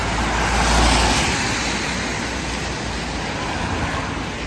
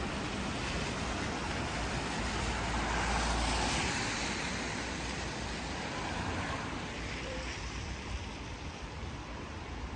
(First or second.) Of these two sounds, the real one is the first